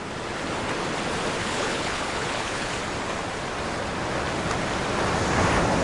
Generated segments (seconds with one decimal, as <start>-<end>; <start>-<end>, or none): 1.4-2.7